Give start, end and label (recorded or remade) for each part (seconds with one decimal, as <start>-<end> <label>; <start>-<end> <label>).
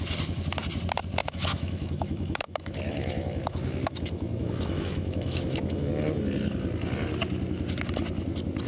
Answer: 0.0-1.2 recorded; 1.2-5.9 remade; 5.9-8.7 recorded